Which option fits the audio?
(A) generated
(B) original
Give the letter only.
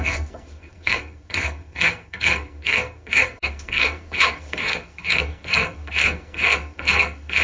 A